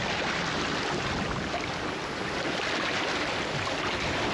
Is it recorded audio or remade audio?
recorded